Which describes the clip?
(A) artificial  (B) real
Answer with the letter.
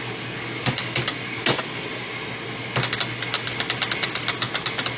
B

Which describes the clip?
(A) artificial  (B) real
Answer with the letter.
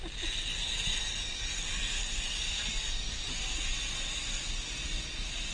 B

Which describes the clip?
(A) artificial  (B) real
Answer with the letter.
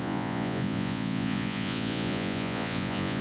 A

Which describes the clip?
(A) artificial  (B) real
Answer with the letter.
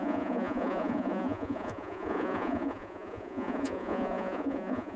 A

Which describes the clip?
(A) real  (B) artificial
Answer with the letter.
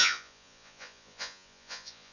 B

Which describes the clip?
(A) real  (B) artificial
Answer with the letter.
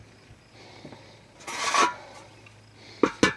A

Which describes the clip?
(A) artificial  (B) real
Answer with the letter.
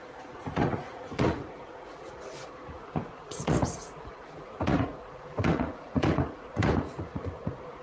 A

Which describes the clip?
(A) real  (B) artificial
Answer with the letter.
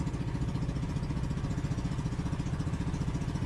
B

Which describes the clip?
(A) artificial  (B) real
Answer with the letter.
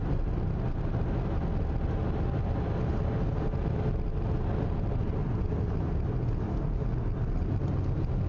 B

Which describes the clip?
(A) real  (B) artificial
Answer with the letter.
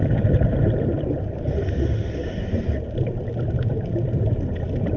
A